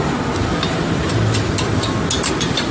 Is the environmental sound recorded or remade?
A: recorded